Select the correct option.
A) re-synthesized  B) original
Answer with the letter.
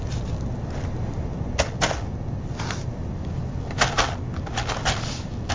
B